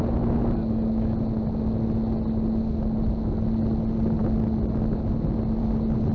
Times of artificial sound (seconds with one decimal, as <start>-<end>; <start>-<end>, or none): none